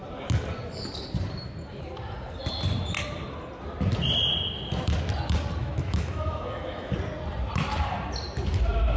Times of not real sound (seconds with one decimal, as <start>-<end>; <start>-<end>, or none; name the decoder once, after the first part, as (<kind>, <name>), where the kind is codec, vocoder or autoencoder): 5.6-6.9 (autoencoder, DAC-VAE)